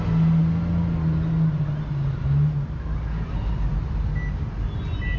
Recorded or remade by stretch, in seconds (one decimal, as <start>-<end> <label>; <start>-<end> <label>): 0.0-5.2 recorded